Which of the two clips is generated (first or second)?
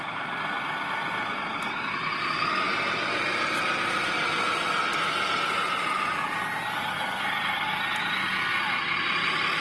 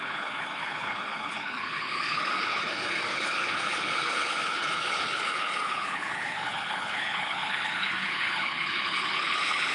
second